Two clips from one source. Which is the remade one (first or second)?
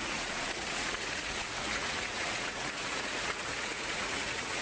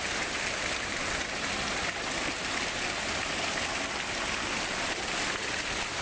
first